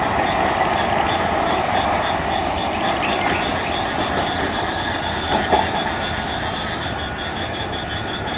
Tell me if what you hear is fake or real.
real